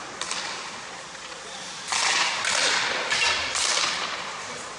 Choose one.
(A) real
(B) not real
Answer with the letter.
A